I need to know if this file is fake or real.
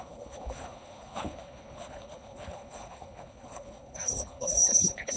fake